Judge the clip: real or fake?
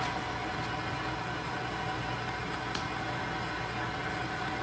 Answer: real